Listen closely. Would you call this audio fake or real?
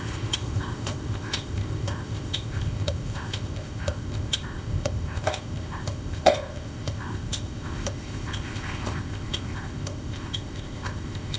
fake